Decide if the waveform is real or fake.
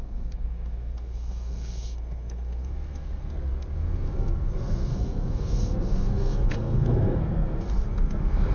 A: fake